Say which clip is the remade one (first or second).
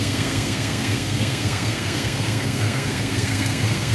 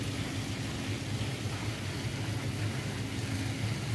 first